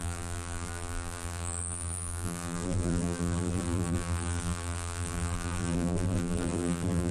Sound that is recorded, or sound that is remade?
remade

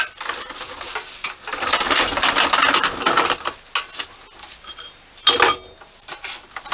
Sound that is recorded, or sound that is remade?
recorded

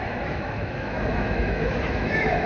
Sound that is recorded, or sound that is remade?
remade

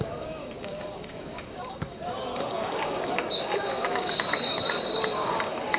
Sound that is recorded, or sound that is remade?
remade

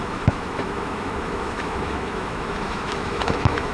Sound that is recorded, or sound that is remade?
remade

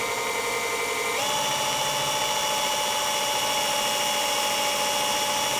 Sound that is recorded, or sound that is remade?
recorded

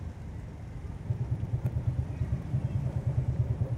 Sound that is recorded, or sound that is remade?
recorded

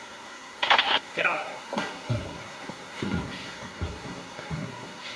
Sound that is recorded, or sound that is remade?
remade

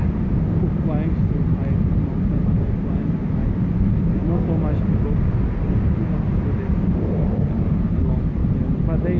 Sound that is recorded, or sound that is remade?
recorded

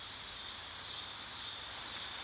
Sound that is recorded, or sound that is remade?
recorded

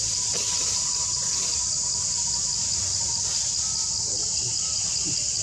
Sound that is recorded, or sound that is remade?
remade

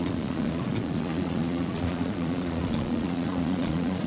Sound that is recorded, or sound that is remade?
remade